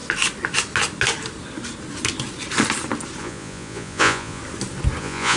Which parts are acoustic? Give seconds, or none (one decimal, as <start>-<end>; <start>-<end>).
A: 0.0-3.2; 4.4-5.0